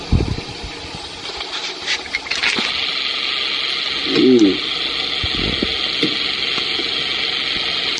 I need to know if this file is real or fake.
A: real